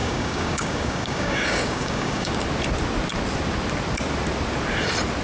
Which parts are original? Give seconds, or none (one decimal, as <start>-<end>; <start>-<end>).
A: 2.3-5.2